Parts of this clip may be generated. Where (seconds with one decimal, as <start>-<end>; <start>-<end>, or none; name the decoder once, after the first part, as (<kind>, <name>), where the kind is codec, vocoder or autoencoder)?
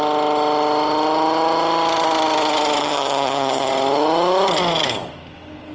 2.8-3.7 (vocoder, HiFi-GAN)